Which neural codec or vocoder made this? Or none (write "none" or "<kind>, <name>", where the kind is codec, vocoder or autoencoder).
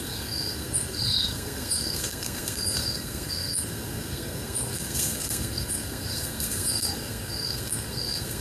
codec, SNAC